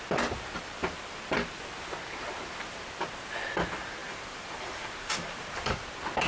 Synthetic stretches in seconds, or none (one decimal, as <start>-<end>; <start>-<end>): 4.0-5.8